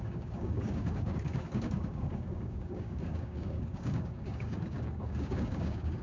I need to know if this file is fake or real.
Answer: fake